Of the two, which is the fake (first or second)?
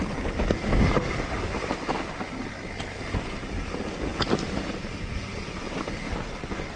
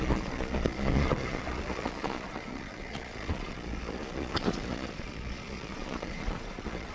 second